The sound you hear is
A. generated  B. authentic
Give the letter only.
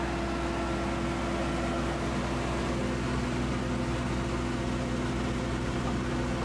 B